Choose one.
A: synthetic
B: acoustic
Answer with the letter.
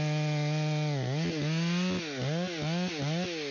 B